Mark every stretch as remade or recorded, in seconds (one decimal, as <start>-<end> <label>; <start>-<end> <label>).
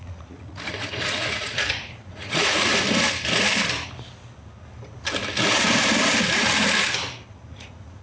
0.0-2.7 remade; 2.7-7.5 recorded; 7.5-8.0 remade